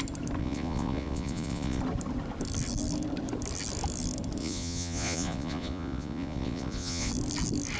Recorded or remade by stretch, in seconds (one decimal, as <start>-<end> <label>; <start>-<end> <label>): 0.0-0.4 recorded; 0.4-1.8 remade; 1.8-4.4 recorded; 4.4-7.1 remade; 7.1-7.8 recorded